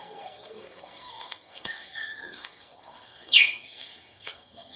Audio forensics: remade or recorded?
remade